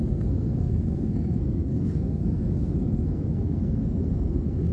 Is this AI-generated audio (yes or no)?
yes